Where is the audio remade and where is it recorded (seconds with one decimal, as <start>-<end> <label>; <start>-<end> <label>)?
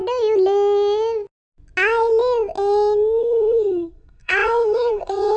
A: 0.0-3.2 recorded; 3.2-5.4 remade